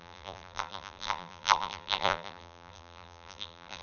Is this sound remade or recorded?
remade